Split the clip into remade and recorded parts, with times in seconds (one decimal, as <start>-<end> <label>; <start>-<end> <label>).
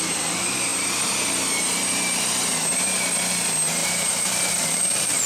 0.0-3.8 recorded; 3.8-5.3 remade